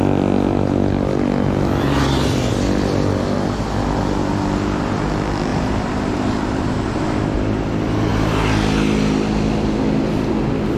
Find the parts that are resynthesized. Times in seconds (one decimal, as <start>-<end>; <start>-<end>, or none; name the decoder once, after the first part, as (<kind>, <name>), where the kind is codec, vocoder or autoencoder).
5.5-7.0 (vocoder, BigVGAN v2)